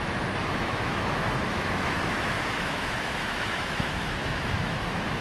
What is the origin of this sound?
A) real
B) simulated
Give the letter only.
B